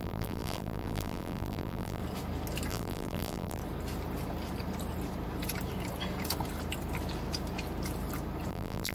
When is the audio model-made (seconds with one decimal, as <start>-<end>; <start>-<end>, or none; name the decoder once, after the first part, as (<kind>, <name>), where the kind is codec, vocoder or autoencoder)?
0.0-2.0 (vocoder, BigVGAN v2); 2.7-3.6; 8.5-8.9